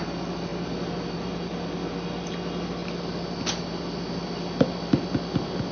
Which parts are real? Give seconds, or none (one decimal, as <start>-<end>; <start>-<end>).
0.0-5.7